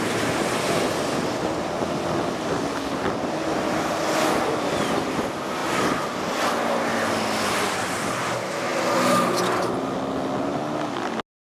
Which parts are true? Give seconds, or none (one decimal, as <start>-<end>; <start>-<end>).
0.0-11.4